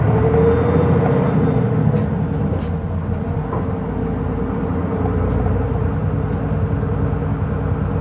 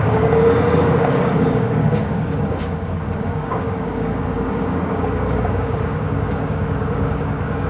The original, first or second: first